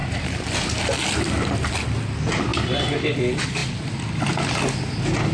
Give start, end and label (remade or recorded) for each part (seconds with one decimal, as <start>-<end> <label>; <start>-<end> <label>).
0.0-5.3 recorded